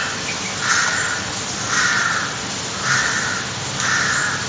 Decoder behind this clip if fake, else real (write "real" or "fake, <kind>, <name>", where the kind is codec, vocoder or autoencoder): real